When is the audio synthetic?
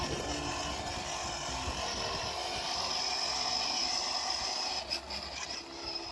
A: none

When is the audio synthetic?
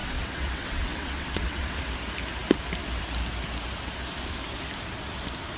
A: 0.0-1.8 (vocoder, WaveNeXt)